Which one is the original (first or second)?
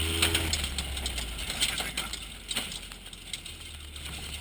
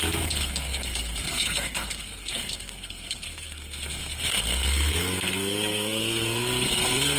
first